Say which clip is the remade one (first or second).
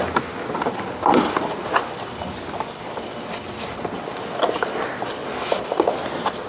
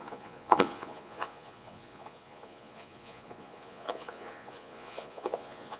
second